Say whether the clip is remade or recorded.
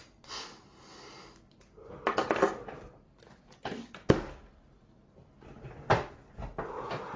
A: recorded